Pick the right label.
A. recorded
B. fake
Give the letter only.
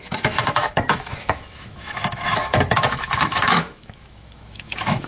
B